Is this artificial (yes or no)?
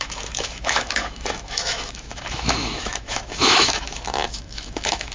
yes